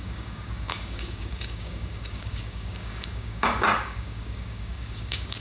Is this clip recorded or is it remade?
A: remade